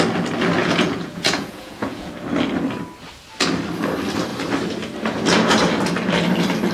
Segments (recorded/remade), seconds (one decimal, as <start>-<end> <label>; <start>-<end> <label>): 0.0-0.6 recorded; 0.6-2.1 remade; 2.1-6.7 recorded